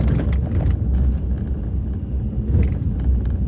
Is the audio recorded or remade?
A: recorded